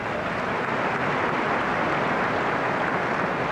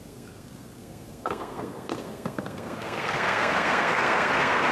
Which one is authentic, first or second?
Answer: first